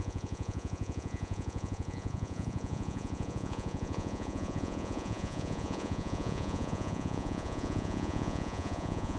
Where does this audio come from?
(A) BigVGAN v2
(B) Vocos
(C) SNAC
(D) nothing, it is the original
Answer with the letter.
B